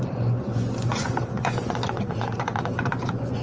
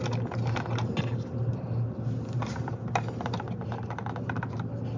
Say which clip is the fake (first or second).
first